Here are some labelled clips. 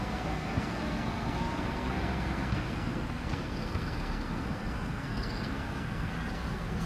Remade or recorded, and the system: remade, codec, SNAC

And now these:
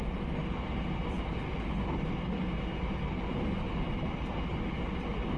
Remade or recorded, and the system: recorded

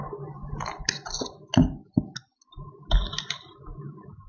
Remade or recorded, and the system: recorded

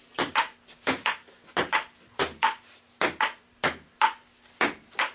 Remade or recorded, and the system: recorded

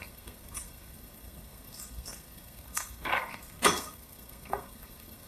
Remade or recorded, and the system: remade, codec, SNAC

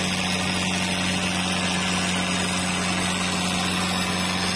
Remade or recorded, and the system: recorded